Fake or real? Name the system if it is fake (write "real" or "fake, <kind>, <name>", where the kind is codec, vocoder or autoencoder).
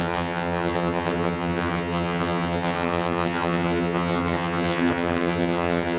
fake, vocoder, HiFi-GAN